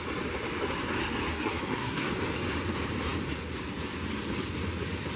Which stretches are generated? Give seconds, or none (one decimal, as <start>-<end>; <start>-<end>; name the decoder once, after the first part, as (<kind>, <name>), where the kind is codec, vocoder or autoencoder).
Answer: 1.3-2.1 (codec, SNAC)